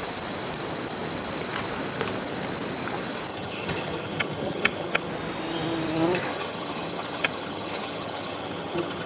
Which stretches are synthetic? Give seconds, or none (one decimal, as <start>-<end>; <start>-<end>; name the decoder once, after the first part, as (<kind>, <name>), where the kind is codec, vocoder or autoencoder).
3.3-5.1 (vocoder, HiFi-GAN); 6.3-9.1